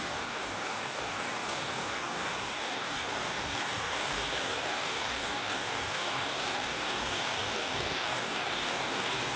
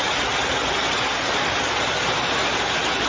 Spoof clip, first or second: first